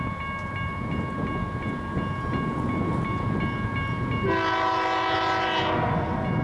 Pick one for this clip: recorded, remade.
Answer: recorded